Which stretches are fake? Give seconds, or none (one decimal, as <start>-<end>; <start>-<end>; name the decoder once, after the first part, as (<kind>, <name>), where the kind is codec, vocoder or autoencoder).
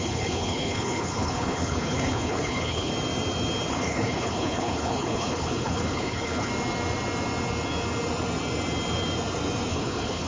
0.0-2.9 (codec, HILCodec); 3.7-6.5; 9.7-10.3